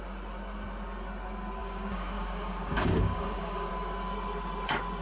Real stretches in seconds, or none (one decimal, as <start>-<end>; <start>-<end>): 0.0-1.6; 3.7-5.0